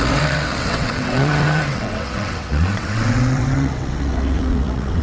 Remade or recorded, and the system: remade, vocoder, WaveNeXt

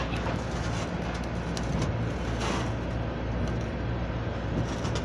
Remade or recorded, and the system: recorded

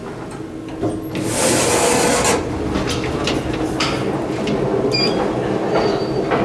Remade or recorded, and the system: recorded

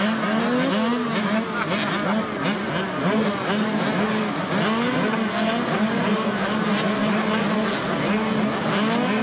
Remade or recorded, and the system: recorded